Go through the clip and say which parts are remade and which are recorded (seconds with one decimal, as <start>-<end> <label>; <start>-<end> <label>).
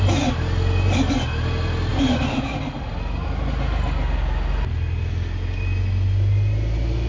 0.0-7.1 recorded